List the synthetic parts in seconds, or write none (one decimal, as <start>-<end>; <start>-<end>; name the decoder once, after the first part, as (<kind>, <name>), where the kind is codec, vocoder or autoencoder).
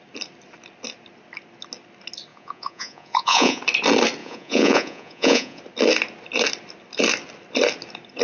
2.3-3.6 (vocoder, Vocos); 4.2-5.6